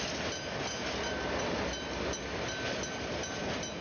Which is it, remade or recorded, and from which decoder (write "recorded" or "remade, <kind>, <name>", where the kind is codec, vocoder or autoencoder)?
recorded